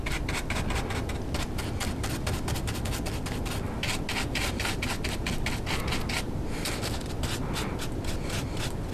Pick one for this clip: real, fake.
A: real